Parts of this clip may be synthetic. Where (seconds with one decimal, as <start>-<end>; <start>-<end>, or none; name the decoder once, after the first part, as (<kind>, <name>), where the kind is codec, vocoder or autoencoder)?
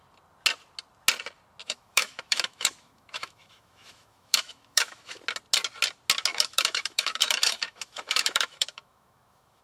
1.6-5.2 (autoencoder, DAC-VAE); 6.3-9.6